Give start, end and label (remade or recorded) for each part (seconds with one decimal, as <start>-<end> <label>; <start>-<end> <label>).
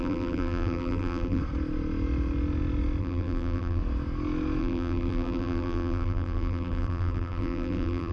0.0-1.4 remade; 1.4-3.0 recorded; 3.0-3.8 remade; 3.8-4.6 recorded; 4.6-8.1 remade